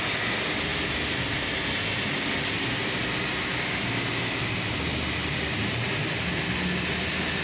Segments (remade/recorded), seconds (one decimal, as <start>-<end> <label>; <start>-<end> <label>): 0.0-5.2 recorded; 5.2-6.1 remade; 6.1-7.4 recorded